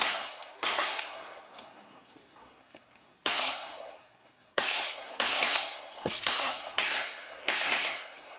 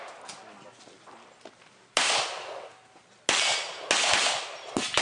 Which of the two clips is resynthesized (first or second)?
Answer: first